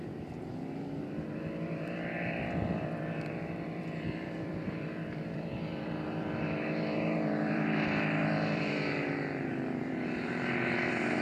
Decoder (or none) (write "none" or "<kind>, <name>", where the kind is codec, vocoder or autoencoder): vocoder, BigVGAN v2